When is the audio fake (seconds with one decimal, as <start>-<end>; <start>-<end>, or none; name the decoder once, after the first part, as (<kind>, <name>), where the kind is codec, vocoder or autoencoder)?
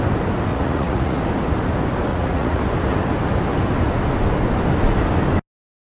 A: 0.5-1.2 (vocoder, Vocos); 2.1-2.6